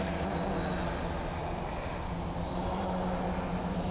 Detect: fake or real real